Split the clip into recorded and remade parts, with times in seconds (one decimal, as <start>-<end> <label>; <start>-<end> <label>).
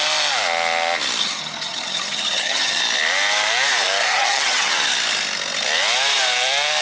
0.0-1.2 recorded; 1.2-2.8 remade; 2.8-4.0 recorded; 4.0-4.7 remade; 4.7-6.8 recorded